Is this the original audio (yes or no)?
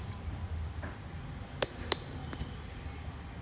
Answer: yes